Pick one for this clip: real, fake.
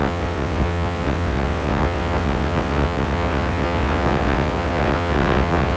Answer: fake